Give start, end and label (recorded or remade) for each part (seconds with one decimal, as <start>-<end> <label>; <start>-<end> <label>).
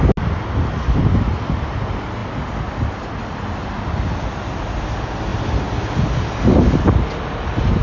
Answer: 0.0-7.8 recorded